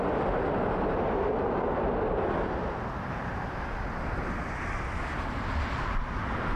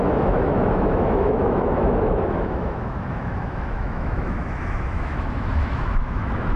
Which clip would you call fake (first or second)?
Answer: second